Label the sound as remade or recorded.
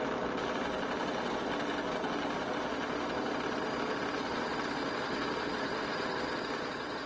recorded